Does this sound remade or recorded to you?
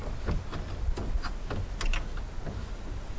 recorded